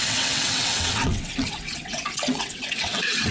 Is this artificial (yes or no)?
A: yes